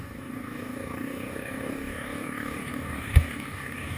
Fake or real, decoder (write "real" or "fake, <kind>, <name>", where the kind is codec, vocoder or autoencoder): fake, codec, DAC